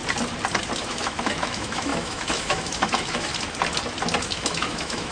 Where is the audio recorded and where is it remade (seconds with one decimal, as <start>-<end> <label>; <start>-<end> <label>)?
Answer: 0.0-0.8 recorded; 0.8-3.3 remade; 3.3-4.2 recorded; 4.2-5.1 remade